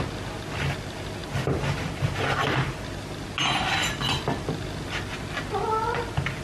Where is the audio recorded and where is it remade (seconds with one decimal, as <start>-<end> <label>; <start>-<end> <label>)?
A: 0.0-6.4 recorded